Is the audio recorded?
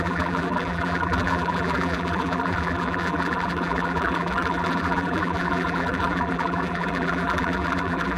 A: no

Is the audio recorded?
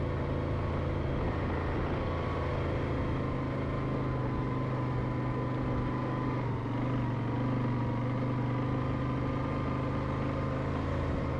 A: yes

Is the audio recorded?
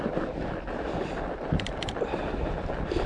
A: yes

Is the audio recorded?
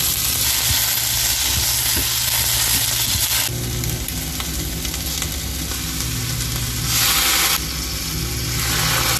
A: yes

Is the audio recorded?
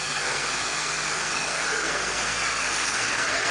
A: no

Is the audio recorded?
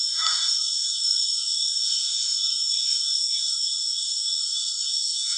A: no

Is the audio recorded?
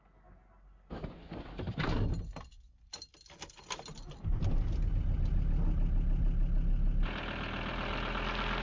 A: yes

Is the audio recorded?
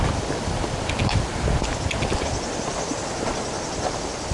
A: yes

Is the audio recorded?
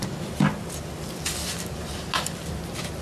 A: yes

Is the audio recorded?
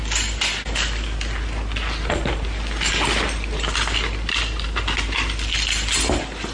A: yes